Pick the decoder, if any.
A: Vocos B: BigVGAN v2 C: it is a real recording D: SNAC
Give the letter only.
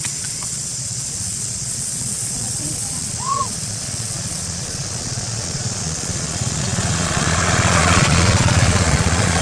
A